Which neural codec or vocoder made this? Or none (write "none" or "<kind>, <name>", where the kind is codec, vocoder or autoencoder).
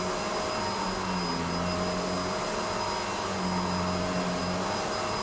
none